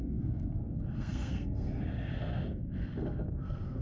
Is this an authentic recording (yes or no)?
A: no